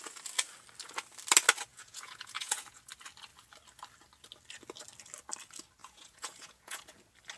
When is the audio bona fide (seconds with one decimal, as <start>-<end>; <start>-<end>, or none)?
0.0-1.7; 2.8-5.8; 6.8-7.4